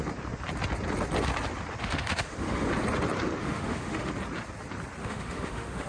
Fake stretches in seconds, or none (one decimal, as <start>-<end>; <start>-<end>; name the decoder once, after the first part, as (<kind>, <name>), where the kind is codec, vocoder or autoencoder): 1.8-2.7 (autoencoder, DAC-VAE); 3.4-4.1; 5.0-5.9